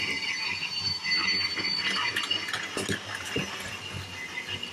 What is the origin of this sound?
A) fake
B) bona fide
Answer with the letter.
B